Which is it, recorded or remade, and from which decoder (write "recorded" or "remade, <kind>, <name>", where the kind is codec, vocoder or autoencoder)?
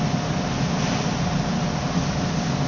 recorded